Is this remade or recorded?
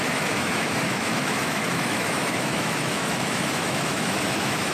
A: remade